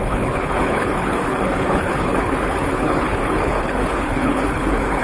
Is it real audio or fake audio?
fake